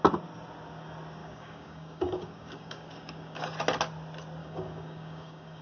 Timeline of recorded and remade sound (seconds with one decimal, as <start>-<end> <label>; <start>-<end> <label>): 0.0-1.2 recorded; 1.2-3.4 remade; 3.4-4.4 recorded; 4.4-5.6 remade

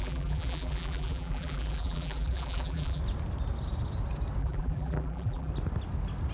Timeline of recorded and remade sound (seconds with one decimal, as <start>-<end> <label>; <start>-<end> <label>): 0.0-3.0 remade; 3.0-4.4 recorded; 4.4-5.5 remade; 5.5-6.3 recorded

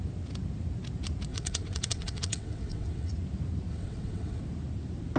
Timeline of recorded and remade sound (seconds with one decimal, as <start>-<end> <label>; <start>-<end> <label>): 0.0-1.3 recorded; 1.3-3.1 remade; 3.1-3.7 recorded; 3.7-4.4 remade; 4.4-5.2 recorded

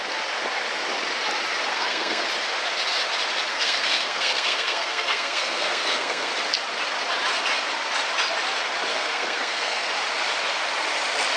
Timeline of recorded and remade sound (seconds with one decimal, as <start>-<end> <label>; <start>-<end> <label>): 0.0-1.7 recorded; 1.7-2.2 remade; 2.2-3.5 recorded; 3.5-6.3 remade; 6.3-8.9 recorded; 8.9-9.9 remade; 9.9-11.4 recorded

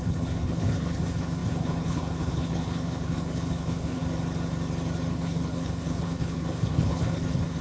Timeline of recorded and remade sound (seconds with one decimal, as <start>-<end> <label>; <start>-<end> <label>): 0.0-4.0 remade; 4.0-5.1 recorded; 5.1-7.6 remade